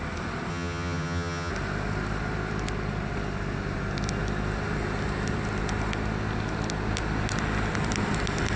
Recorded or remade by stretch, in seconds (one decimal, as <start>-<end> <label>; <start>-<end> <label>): 0.0-0.5 recorded; 0.5-1.5 remade; 1.5-8.6 recorded